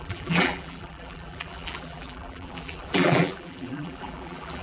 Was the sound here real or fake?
fake